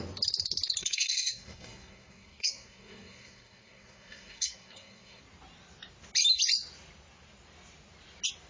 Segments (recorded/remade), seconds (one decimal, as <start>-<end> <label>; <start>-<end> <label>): 0.0-0.8 recorded; 0.8-5.2 remade; 5.2-8.5 recorded